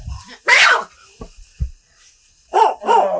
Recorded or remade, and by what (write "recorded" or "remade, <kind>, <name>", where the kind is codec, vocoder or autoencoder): recorded